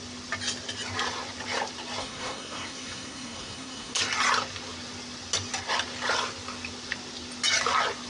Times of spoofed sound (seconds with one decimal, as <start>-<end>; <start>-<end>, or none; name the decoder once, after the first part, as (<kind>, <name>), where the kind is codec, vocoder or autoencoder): 2.0-4.0 (codec, SNAC)